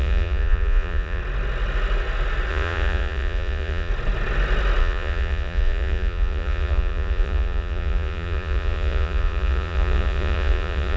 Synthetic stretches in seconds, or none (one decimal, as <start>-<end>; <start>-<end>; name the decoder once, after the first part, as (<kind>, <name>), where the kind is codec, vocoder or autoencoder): 0.0-1.2 (vocoder, Vocos); 2.5-3.9; 4.8-11.0